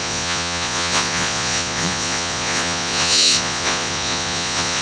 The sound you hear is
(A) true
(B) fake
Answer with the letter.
B